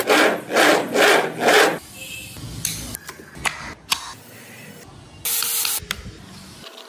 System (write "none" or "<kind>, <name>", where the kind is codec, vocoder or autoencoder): none